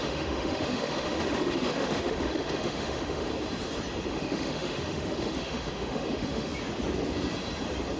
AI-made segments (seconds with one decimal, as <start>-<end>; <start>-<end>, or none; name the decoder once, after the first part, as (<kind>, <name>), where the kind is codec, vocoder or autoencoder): 0.0-3.3 (autoencoder, DAC-VAE); 4.1-6.5